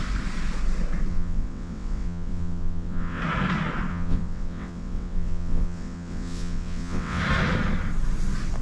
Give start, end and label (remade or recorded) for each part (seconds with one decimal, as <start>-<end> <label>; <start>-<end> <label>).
0.0-1.1 recorded; 1.1-3.2 remade; 3.2-3.9 recorded; 3.9-7.2 remade; 7.2-8.6 recorded